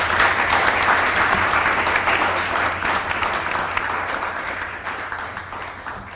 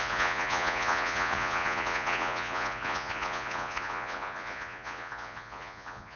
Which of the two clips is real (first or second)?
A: first